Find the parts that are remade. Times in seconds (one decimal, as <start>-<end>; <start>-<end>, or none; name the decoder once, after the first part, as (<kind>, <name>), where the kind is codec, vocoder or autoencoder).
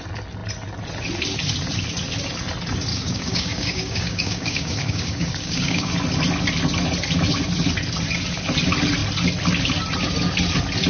2.9-5.9 (codec, DAC)